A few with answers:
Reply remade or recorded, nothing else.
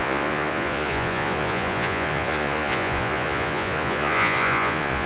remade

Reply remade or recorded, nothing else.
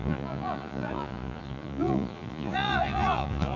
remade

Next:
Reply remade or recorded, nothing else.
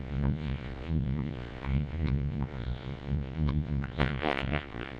remade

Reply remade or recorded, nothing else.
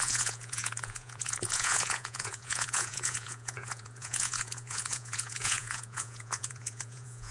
remade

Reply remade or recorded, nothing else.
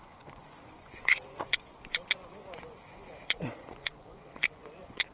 remade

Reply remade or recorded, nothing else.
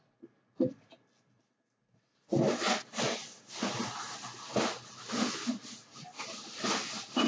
recorded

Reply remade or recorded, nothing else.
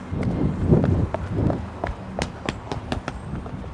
recorded